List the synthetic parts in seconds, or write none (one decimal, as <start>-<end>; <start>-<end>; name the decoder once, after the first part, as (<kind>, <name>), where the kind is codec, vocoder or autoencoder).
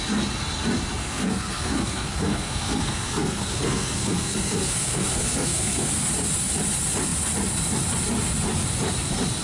1.0-5.9 (codec, SNAC)